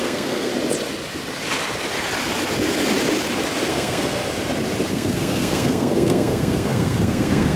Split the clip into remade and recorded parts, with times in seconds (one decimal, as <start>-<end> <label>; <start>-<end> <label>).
0.0-0.5 remade; 0.5-3.7 recorded; 3.7-4.2 remade; 4.2-4.9 recorded; 4.9-7.6 remade